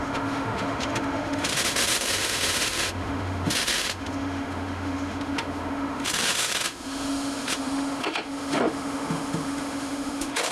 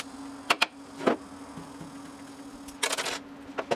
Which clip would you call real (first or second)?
second